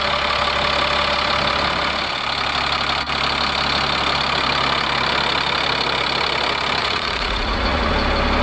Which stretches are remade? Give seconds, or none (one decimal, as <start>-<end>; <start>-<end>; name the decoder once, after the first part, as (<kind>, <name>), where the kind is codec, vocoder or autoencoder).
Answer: 6.8-7.9 (vocoder, Vocos)

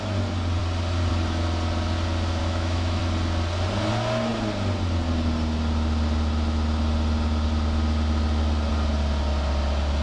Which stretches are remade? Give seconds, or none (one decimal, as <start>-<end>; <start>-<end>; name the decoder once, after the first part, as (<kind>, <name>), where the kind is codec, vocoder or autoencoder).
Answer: 2.4-3.0 (autoencoder, DAC-VAE)